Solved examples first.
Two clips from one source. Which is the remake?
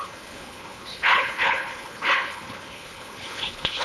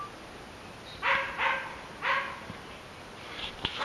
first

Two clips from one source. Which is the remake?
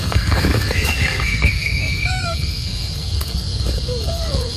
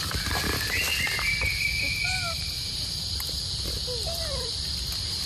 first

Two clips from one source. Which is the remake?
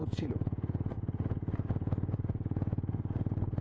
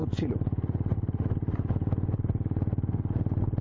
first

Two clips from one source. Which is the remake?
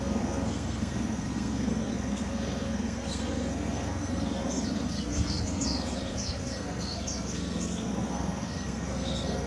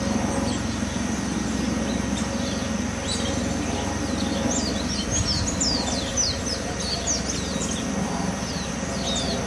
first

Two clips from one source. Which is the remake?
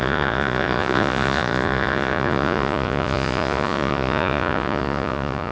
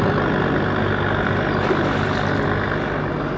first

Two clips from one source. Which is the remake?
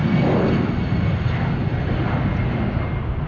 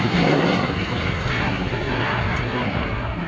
second